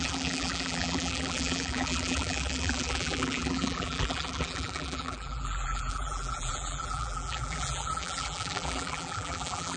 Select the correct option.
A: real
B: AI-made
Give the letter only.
B